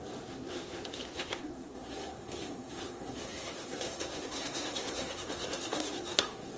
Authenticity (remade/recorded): remade